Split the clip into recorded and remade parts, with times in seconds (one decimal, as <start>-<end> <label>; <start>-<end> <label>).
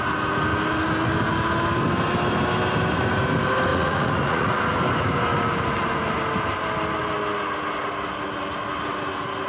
0.0-3.7 recorded; 3.7-4.6 remade; 4.6-9.5 recorded